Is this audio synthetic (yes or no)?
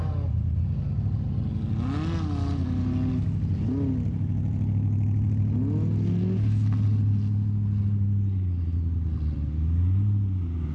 no